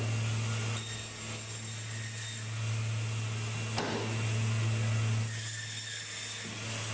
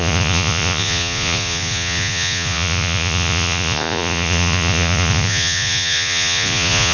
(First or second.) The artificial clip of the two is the second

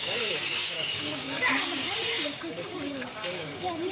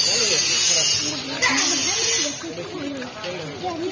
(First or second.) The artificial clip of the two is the first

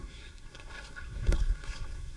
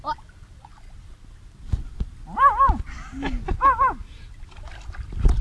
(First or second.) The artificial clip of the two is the first